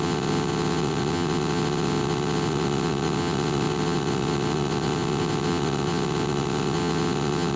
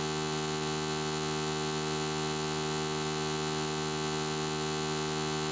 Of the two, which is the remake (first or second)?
first